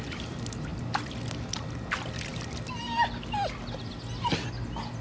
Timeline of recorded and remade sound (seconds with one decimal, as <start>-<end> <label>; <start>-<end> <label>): 0.0-5.0 recorded

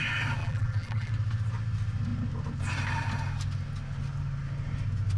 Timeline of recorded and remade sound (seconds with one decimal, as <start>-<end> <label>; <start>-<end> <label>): 0.0-0.4 recorded; 0.4-1.1 remade; 1.1-5.2 recorded

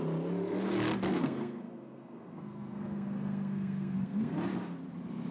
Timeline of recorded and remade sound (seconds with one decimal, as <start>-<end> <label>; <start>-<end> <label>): 0.0-1.1 recorded; 1.1-4.3 remade; 4.3-5.3 recorded